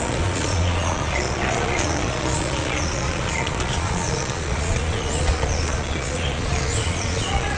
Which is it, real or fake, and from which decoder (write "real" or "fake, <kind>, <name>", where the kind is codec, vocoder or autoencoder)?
fake, vocoder, Vocos